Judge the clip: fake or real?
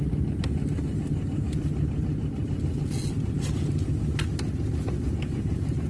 real